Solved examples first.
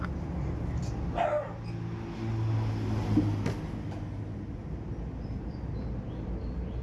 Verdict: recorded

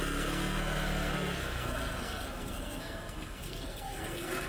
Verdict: remade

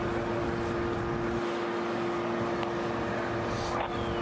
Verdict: recorded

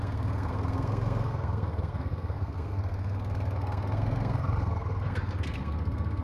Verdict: remade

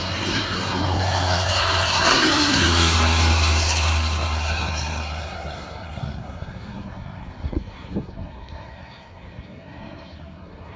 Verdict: remade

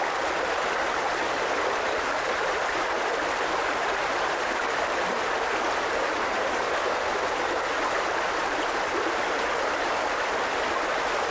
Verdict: recorded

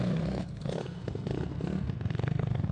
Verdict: remade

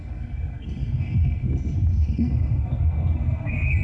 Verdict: remade